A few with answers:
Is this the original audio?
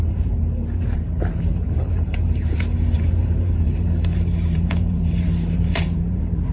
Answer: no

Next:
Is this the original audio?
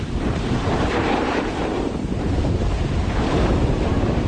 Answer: no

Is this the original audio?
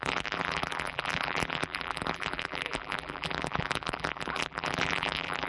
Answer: no